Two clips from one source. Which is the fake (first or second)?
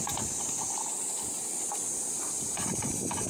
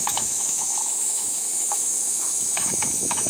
second